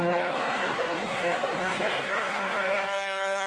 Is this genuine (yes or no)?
no